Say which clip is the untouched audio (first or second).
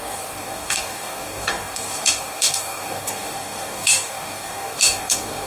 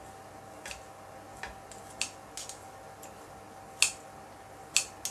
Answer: second